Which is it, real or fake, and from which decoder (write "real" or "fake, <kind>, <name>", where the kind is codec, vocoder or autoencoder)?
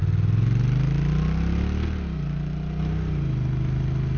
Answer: real